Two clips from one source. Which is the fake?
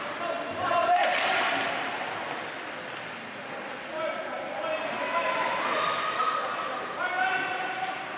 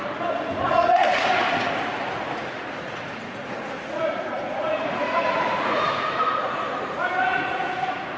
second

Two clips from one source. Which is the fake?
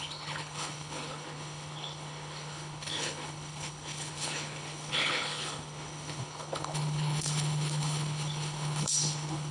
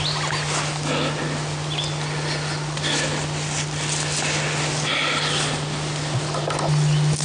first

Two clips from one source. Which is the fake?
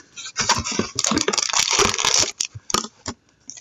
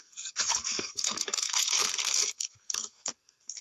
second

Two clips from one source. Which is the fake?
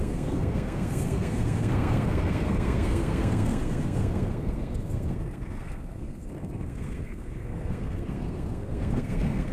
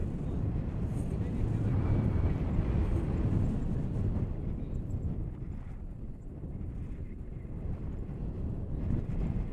first